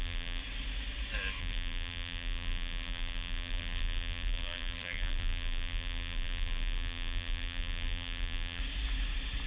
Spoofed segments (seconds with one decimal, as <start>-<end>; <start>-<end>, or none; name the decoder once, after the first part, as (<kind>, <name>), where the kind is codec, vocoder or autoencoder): 0.0-0.4 (vocoder, BigVGAN v2); 1.4-8.6